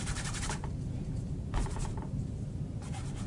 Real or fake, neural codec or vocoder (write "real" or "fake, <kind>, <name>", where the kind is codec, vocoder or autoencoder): fake, vocoder, BigVGAN v2